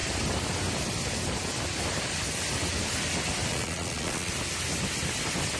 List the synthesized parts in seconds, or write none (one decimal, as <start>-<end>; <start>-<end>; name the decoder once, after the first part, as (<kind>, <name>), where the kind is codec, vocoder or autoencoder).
3.5-4.3 (vocoder, Vocos)